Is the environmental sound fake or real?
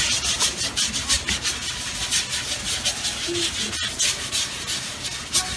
real